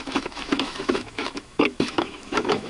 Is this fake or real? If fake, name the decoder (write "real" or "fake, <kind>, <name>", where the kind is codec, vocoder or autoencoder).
fake, autoencoder, DAC-VAE